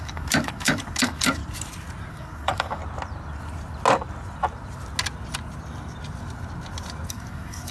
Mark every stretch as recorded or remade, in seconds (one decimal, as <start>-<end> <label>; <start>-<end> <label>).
0.0-1.4 remade; 1.4-2.1 recorded; 2.1-2.8 remade; 2.8-7.1 recorded; 7.1-7.7 remade